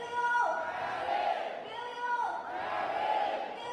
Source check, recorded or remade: recorded